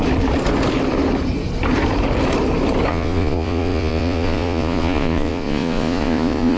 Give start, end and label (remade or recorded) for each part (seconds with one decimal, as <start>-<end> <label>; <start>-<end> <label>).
0.0-2.9 recorded; 2.9-6.6 remade